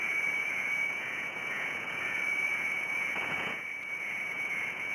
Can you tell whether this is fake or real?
fake